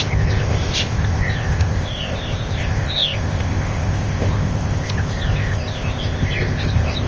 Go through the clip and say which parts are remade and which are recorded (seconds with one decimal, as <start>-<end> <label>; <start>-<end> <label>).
0.0-7.1 remade